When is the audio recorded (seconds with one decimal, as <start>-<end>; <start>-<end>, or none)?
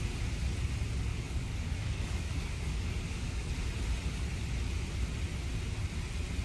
0.0-1.1; 3.5-6.4